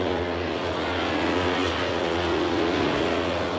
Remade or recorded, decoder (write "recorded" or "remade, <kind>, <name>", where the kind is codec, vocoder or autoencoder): remade, vocoder, Vocos